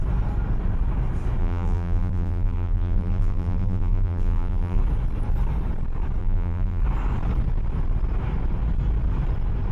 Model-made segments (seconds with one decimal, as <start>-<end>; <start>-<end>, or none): 1.4-4.8; 6.2-6.8